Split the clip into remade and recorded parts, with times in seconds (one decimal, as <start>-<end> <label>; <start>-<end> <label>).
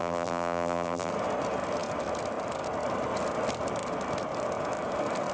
0.0-1.1 remade; 1.1-5.3 recorded